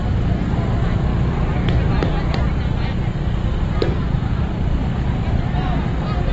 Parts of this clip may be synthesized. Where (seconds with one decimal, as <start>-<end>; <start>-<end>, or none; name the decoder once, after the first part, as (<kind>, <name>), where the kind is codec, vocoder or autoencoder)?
none